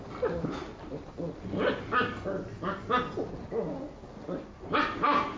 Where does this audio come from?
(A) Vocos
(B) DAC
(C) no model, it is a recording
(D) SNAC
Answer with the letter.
C